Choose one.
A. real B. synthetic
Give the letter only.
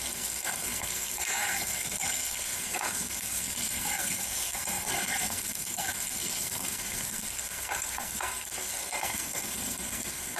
B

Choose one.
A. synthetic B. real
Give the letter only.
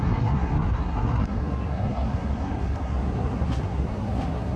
A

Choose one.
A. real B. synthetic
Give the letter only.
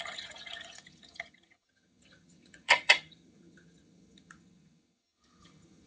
B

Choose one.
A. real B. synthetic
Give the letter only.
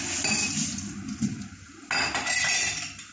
A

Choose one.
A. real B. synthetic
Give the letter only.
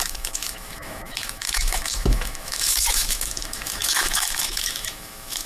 B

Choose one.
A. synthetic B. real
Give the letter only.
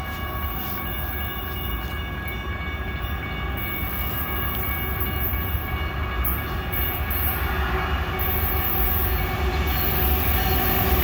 B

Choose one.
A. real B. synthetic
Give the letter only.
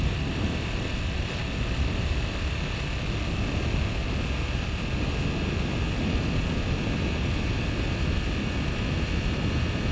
A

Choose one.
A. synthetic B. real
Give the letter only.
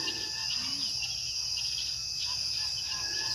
B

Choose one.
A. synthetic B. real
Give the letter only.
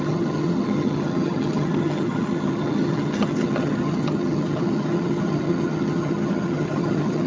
A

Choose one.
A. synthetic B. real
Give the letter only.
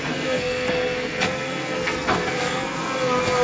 A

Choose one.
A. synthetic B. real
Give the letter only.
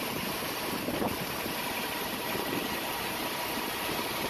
A